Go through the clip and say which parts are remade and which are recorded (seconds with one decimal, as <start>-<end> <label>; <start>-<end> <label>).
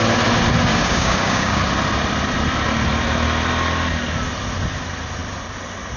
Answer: 0.0-0.7 recorded; 0.7-1.6 remade; 1.6-6.0 recorded